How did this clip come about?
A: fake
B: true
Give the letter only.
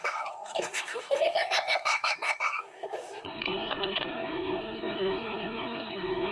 A